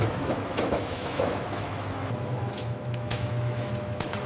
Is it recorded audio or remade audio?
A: remade